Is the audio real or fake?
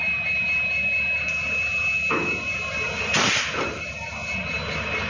real